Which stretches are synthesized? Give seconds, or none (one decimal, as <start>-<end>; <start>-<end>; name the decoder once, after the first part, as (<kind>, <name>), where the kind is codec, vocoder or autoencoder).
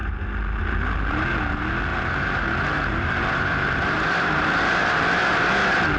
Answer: 1.9-5.5 (vocoder, BigVGAN v2)